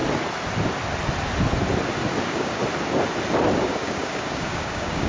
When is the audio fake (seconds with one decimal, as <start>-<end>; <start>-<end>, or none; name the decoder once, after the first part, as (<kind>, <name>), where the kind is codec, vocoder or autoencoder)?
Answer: 2.2-2.6 (codec, DAC); 3.6-5.1